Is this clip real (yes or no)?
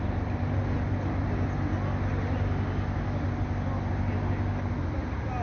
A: yes